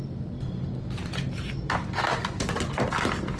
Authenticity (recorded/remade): recorded